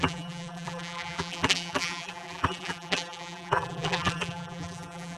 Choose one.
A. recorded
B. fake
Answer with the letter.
B